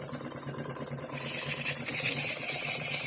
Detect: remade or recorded remade